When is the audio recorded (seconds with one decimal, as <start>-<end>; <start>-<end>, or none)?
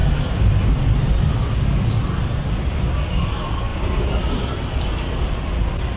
0.0-3.7; 4.6-6.0